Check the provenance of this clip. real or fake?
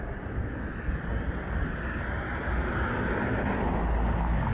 real